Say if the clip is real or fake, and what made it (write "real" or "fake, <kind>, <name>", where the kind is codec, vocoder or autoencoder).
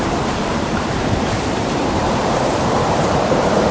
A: fake, vocoder, BigVGAN v2